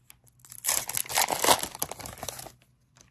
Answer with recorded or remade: recorded